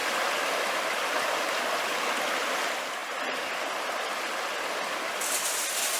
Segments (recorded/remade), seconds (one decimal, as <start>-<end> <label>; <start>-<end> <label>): 0.0-1.4 remade; 1.4-6.0 recorded